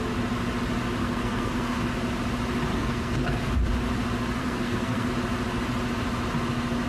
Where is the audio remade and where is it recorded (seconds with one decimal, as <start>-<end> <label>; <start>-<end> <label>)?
0.0-1.0 recorded; 1.0-1.9 remade; 1.9-2.7 recorded; 2.7-3.5 remade; 3.5-4.4 recorded; 4.4-5.1 remade; 5.1-6.9 recorded